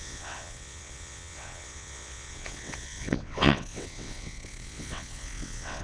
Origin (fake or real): fake